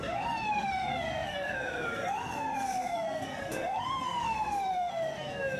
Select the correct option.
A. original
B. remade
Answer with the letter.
B